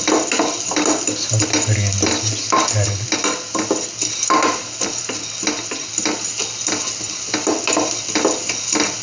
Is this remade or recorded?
recorded